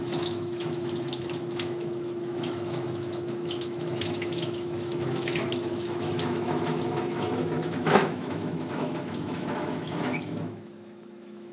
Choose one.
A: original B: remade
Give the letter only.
B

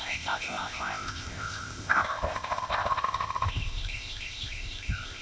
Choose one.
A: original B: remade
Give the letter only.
B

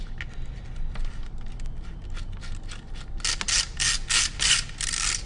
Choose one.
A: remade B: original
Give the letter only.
B